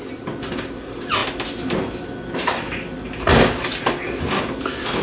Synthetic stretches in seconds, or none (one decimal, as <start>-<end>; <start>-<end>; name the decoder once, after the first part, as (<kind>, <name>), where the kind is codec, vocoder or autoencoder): none